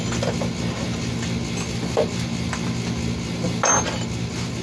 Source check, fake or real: real